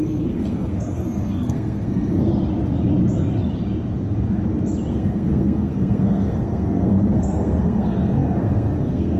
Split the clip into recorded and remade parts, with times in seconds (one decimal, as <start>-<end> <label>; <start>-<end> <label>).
0.0-2.3 remade; 2.3-4.9 recorded; 4.9-9.2 remade